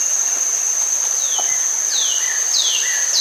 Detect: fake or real real